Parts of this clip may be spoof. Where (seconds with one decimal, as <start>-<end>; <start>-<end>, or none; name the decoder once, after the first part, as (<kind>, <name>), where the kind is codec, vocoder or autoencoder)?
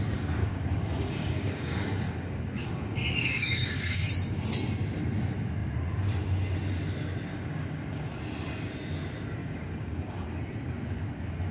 0.4-4.1 (codec, DAC); 7.3-8.1; 9.4-10.3